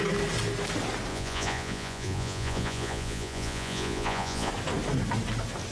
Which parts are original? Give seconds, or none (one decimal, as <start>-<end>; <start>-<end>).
0.0-1.1; 4.5-5.7